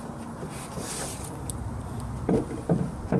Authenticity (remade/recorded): recorded